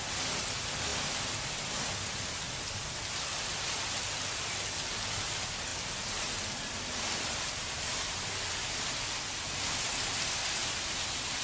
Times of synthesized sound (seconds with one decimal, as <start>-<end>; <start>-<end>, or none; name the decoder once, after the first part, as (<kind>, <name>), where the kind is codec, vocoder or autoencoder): none